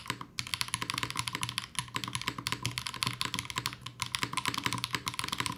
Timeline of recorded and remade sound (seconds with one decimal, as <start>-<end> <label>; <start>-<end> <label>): 0.0-5.6 recorded